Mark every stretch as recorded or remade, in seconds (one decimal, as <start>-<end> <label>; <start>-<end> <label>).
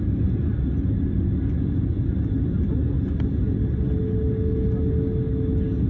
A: 0.0-5.9 recorded